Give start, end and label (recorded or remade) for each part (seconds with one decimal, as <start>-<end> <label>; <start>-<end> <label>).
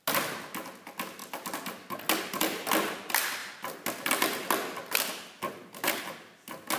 0.0-6.8 recorded